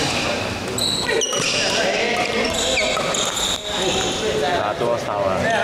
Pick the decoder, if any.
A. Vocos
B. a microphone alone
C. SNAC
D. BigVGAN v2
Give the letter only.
B